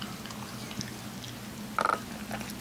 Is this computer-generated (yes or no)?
no